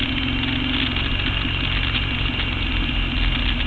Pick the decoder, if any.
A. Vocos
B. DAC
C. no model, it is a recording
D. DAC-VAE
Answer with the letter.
C